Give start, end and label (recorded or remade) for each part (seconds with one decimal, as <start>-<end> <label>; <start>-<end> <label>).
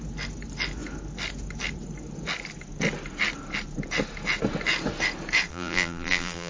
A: 0.0-5.5 recorded; 5.5-6.5 remade